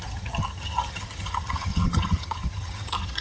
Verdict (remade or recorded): remade